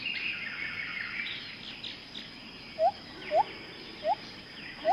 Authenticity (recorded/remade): recorded